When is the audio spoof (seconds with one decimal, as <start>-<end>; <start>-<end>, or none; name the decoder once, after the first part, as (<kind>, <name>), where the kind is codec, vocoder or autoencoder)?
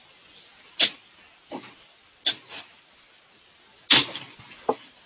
none